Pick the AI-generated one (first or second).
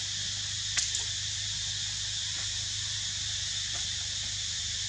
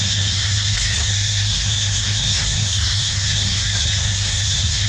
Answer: second